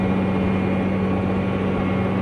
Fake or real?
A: real